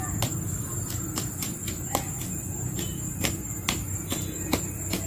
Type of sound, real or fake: real